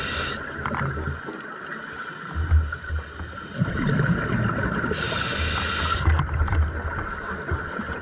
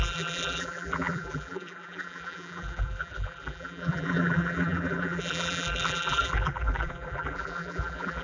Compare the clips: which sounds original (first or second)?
first